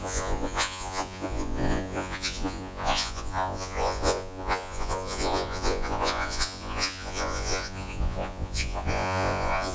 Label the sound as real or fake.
fake